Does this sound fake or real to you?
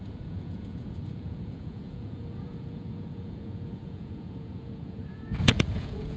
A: fake